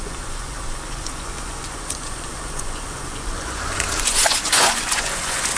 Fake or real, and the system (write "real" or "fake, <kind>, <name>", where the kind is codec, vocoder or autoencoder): fake, vocoder, Vocos